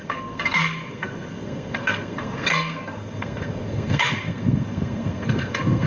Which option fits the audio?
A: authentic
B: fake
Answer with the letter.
B